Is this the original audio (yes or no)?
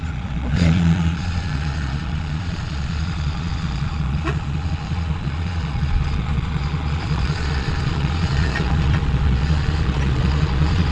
no